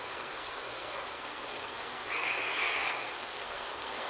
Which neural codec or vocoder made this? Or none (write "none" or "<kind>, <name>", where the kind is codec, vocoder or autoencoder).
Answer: codec, SNAC